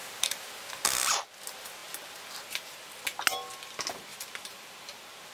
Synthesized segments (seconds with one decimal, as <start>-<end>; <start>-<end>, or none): 0.0-0.5; 4.1-5.3